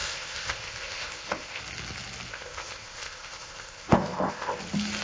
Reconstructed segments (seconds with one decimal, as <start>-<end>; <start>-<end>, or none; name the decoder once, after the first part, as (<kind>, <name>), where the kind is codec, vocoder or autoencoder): 0.0-1.6 (codec, ZipCodec); 2.3-4.6